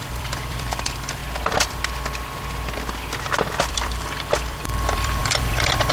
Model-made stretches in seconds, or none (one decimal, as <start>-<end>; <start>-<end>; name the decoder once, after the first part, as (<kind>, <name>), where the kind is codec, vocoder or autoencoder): 0.0-1.2 (vocoder, BigVGAN v2); 3.7-5.9

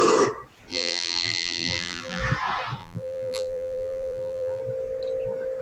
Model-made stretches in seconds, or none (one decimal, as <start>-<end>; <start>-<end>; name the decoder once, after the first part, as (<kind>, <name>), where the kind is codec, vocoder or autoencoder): 0.7-2.2 (vocoder, BigVGAN v2); 2.8-4.6

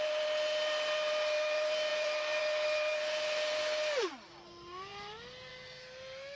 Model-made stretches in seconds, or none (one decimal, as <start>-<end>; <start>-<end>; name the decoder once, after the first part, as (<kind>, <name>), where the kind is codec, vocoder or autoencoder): 0.0-6.4 (vocoder, BigVGAN v2)